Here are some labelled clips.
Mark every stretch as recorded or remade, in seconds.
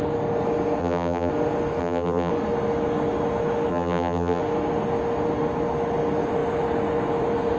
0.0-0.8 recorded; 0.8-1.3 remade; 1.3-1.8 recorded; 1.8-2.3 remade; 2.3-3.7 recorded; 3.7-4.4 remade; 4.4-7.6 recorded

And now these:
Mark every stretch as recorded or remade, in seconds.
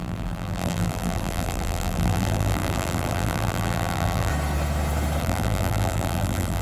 0.0-4.3 remade; 4.3-5.2 recorded; 5.2-6.6 remade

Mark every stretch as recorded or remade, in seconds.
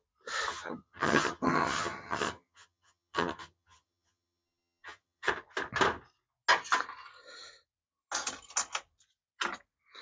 0.0-0.5 recorded; 0.5-5.3 remade; 5.3-10.0 recorded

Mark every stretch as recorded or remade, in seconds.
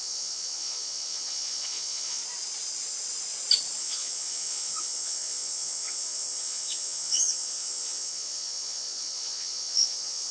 0.0-2.2 remade; 2.2-3.8 recorded; 3.8-10.3 remade